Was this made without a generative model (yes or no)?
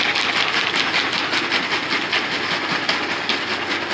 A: yes